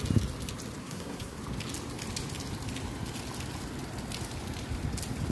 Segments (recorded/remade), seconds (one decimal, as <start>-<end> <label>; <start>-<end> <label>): 0.0-0.8 recorded; 0.8-1.4 remade; 1.4-5.3 recorded